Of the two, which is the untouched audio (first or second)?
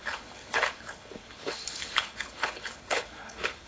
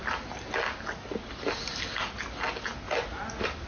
second